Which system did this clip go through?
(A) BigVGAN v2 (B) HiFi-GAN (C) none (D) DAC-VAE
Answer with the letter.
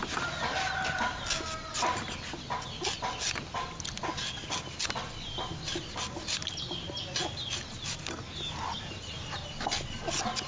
C